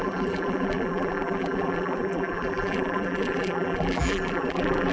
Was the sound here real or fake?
fake